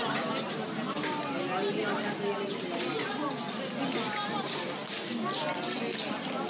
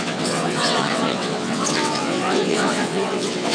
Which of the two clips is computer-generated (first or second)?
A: second